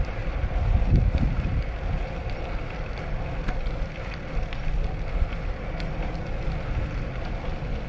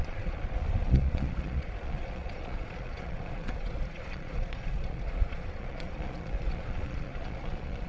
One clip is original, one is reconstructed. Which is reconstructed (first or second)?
second